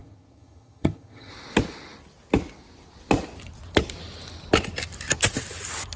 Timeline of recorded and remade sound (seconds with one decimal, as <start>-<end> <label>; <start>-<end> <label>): 0.0-1.3 remade; 1.3-6.0 recorded